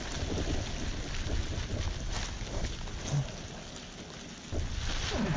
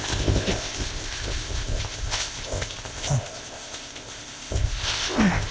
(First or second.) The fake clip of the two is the second